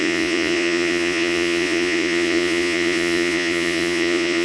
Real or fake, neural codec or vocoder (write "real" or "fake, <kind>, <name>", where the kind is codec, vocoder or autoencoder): fake, vocoder, Vocos